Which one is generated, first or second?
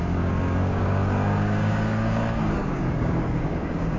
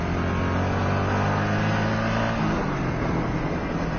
first